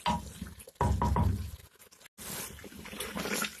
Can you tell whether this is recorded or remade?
recorded